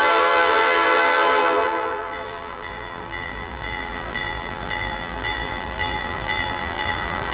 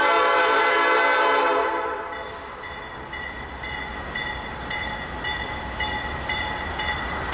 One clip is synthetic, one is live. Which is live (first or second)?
second